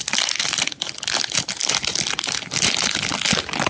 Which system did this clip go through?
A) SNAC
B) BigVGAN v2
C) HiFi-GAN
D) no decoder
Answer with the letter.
D